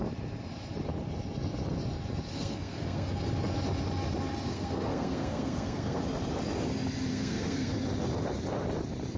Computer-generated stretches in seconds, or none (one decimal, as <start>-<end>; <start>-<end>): 2.3-3.1; 4.5-6.0; 7.1-7.7